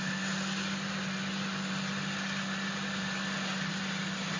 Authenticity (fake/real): real